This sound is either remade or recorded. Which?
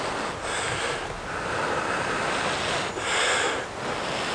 recorded